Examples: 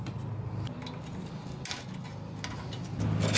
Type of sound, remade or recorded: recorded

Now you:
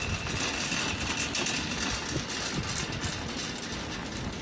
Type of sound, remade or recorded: recorded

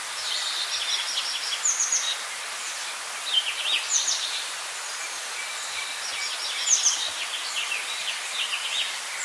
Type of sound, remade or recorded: recorded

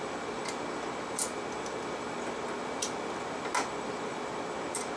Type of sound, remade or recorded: recorded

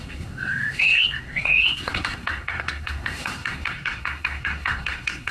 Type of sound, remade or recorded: remade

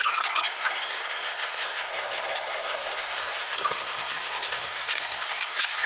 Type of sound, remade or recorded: remade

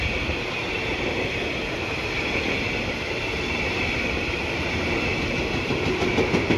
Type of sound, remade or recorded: recorded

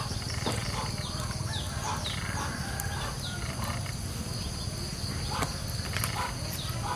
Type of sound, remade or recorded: recorded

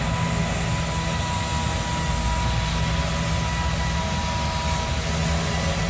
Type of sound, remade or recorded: recorded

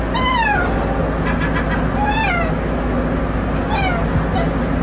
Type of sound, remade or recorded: recorded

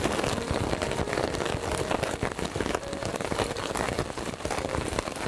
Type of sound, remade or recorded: recorded